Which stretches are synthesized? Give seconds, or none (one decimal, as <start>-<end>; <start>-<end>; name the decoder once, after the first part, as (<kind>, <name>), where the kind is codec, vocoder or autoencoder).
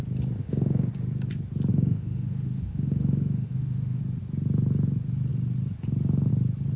0.4-0.9 (autoencoder, DAC-VAE); 1.7-4.0